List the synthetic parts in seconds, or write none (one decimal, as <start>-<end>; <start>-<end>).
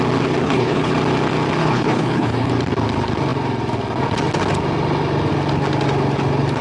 0.4-0.9; 1.6-2.5